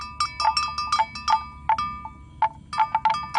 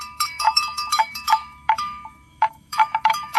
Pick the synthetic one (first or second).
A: second